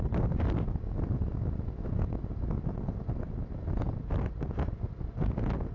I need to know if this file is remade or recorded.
recorded